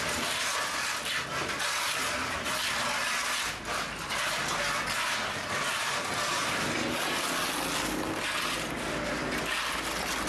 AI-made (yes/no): no